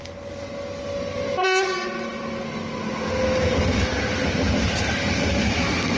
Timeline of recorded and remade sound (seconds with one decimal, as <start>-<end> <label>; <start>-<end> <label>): 0.0-6.0 recorded